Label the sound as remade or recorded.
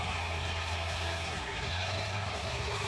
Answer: remade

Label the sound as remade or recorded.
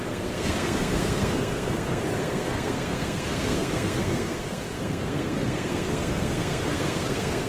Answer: remade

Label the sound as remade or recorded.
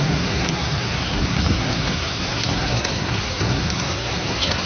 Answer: remade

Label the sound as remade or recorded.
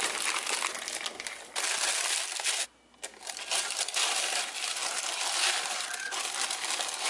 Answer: recorded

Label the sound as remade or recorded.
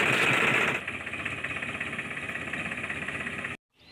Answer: recorded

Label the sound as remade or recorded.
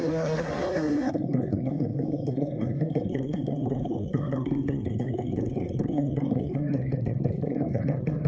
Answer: remade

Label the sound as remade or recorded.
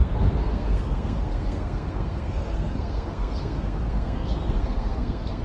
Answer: remade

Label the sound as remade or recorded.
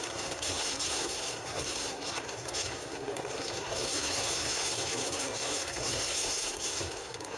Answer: remade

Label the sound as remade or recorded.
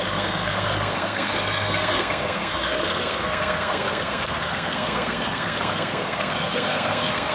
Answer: remade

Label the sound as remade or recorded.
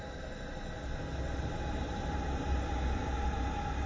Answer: recorded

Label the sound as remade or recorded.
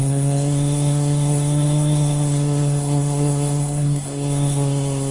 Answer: remade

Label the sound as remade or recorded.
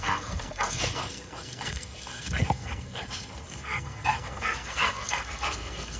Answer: remade